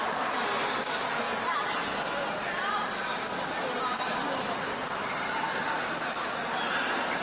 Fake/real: real